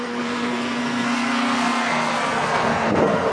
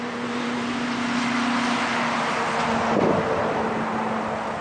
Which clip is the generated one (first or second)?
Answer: first